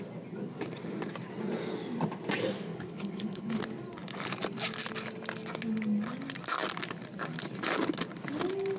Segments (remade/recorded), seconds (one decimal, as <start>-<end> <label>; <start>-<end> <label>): 0.0-2.7 recorded; 2.7-3.6 remade; 3.6-8.8 recorded

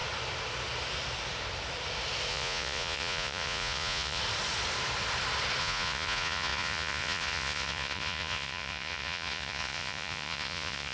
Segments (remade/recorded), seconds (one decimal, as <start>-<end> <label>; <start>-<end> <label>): 0.0-2.3 recorded; 2.3-4.2 remade; 4.2-5.6 recorded; 5.6-10.9 remade